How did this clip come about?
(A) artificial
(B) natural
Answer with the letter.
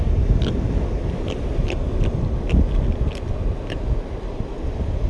B